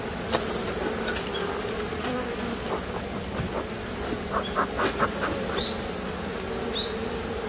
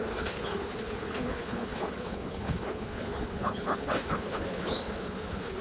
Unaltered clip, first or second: first